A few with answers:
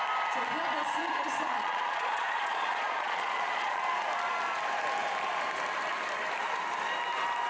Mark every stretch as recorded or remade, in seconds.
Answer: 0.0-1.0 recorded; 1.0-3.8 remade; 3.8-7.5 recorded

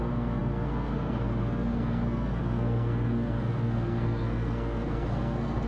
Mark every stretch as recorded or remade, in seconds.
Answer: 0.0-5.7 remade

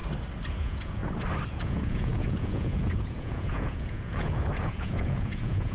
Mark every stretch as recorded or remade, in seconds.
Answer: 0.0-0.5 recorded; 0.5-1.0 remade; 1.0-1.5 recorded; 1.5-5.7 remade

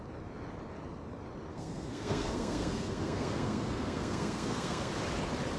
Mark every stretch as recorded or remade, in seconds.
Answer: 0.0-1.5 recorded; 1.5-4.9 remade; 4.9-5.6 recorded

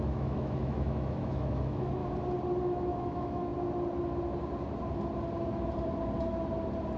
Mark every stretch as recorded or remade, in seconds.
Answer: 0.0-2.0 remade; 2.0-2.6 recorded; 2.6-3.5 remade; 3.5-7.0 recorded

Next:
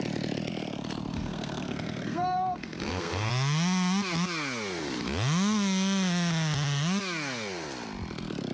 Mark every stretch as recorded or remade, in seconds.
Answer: 0.0-1.1 recorded; 1.1-3.3 remade; 3.3-8.5 recorded